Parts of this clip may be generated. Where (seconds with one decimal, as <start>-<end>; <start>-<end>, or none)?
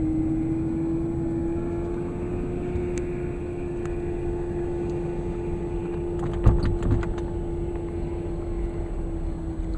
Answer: none